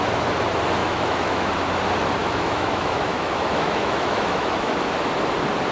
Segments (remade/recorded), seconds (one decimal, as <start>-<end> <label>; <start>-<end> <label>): 0.0-0.8 recorded; 0.8-1.5 remade; 1.5-2.2 recorded; 2.2-4.7 remade; 4.7-5.7 recorded